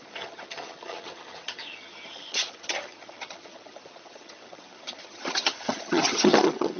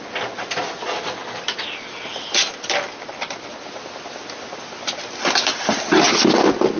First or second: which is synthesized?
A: first